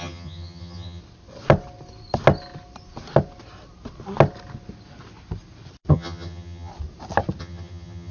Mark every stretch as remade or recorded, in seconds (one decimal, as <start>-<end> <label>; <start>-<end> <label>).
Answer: 0.0-1.0 remade; 1.0-5.9 recorded; 5.9-6.7 remade; 6.7-7.4 recorded; 7.4-8.1 remade